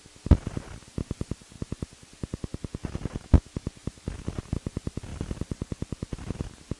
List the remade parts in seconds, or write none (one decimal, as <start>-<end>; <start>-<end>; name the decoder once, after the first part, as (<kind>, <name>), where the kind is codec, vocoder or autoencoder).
none